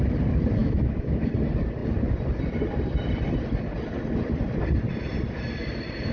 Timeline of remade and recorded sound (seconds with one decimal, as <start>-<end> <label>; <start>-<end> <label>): 0.0-0.6 recorded; 0.6-1.3 remade; 1.3-6.1 recorded